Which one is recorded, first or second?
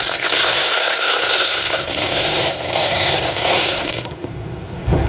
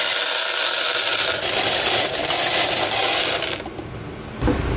second